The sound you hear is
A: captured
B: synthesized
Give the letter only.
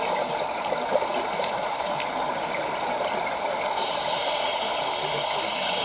A